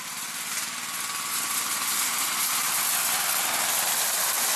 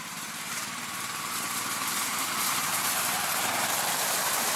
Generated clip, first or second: second